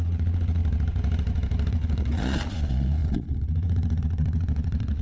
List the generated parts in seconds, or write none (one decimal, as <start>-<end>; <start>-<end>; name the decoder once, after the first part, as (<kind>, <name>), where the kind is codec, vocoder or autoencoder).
0.0-0.6 (vocoder, Vocos); 1.7-5.0